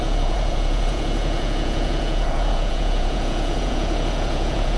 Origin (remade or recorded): remade